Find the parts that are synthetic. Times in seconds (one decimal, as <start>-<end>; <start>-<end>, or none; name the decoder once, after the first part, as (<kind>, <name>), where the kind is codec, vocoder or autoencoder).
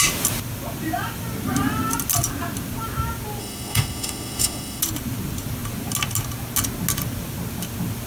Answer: 3.4-4.8 (autoencoder, DAC-VAE)